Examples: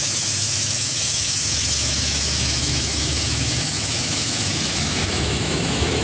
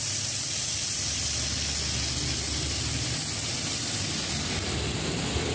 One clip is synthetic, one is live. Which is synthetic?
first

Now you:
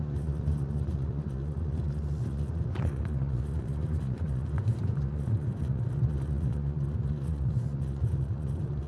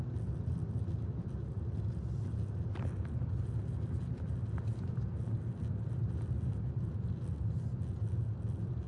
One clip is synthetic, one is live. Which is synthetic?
first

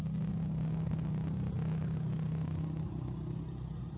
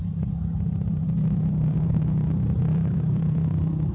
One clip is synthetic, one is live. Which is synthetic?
second